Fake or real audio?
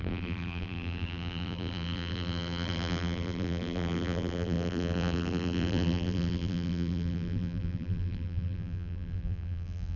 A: fake